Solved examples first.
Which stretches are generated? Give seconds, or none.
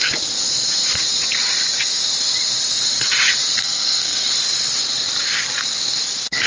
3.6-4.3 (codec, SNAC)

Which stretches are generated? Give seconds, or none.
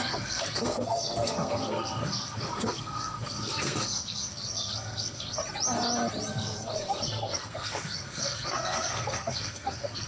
0.0-5.4 (codec, SNAC); 6.3-10.1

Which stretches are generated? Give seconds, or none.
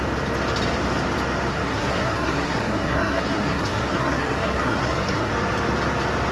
1.5-5.3 (codec, SNAC)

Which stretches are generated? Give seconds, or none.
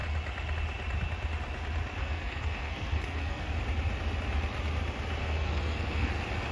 2.0-3.6 (codec, SNAC); 5.2-6.1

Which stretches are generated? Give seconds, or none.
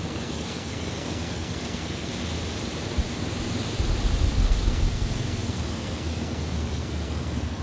0.0-2.1 (codec, SNAC); 4.3-7.6